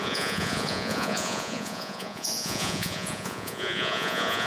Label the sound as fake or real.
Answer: fake